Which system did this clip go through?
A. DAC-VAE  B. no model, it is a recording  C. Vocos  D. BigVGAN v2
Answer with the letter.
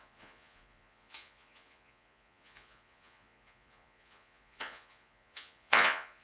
C